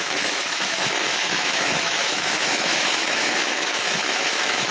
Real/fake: fake